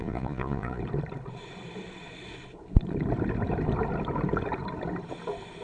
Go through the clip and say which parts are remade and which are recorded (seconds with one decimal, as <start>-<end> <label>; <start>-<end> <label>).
0.0-0.8 remade; 0.8-5.6 recorded